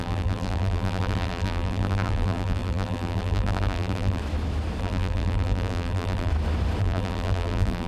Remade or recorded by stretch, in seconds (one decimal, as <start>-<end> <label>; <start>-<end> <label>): 0.0-4.2 remade; 4.2-4.8 recorded; 4.8-6.3 remade; 6.3-6.8 recorded; 6.8-7.9 remade